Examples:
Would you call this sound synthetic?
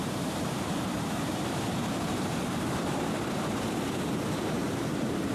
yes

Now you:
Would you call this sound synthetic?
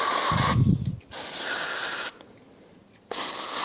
no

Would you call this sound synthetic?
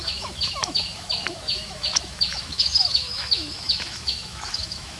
yes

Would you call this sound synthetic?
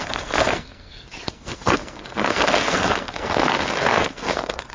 yes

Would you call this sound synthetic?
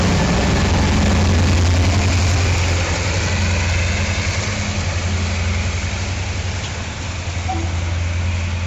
no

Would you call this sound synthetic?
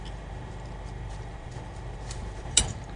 yes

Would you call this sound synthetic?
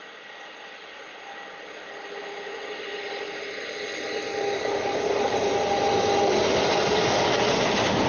no